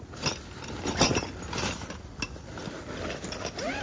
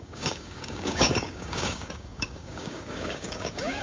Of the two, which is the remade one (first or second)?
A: second